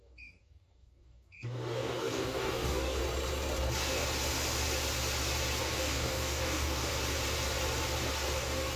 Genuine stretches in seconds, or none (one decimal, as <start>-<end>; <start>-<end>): 3.0-5.6; 6.9-8.4